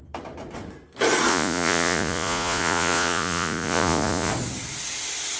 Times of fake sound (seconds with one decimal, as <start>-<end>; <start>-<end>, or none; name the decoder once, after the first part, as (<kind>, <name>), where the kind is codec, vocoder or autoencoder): 1.3-4.3 (vocoder, Vocos)

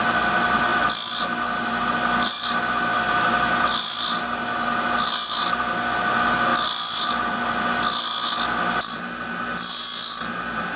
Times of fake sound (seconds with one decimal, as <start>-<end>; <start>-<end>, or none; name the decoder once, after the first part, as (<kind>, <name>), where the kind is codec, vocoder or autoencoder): none

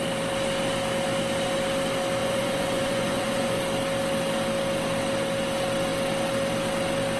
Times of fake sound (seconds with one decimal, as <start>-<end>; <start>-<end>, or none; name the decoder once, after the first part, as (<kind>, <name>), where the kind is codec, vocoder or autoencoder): 2.2-3.6 (vocoder, Vocos)

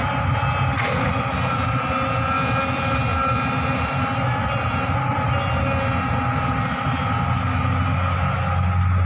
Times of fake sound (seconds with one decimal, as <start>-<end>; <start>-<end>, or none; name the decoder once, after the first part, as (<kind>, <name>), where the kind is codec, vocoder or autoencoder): none

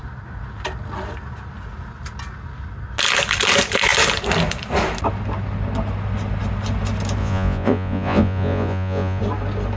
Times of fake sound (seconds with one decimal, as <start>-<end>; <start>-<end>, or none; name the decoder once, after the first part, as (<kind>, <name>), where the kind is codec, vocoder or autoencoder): 7.2-9.2 (vocoder, Vocos)

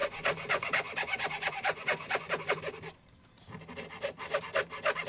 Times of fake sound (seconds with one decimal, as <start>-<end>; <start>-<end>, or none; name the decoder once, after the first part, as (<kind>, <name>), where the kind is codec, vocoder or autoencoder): 0.0-2.6 (vocoder, Vocos)